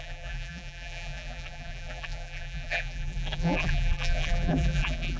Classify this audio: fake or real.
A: fake